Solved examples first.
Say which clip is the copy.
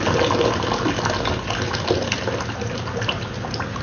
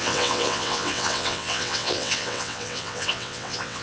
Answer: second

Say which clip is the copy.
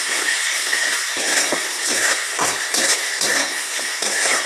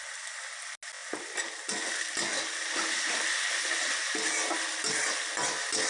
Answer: first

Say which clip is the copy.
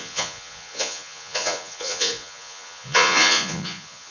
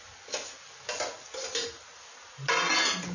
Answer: first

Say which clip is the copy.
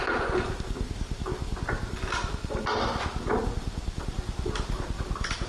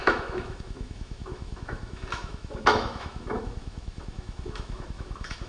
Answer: second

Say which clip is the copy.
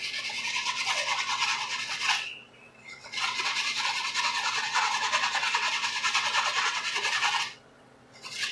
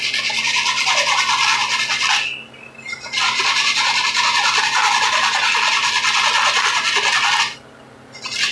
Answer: first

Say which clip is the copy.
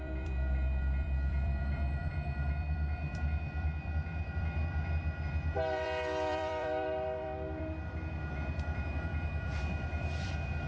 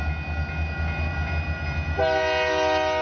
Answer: first